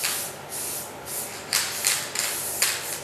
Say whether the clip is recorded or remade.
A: recorded